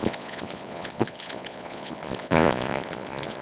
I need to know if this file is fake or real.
fake